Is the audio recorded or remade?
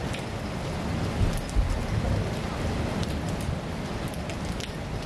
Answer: recorded